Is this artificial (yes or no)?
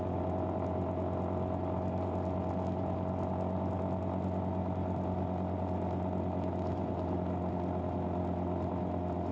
no